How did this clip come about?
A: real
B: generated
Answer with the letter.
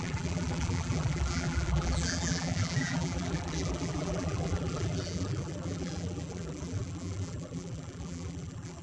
B